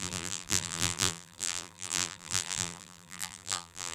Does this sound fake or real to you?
fake